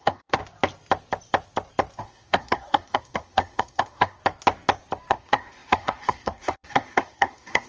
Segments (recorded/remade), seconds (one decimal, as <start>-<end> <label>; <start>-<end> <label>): 0.0-0.4 remade; 0.4-2.0 recorded; 2.0-4.2 remade; 4.2-5.1 recorded; 5.1-7.7 remade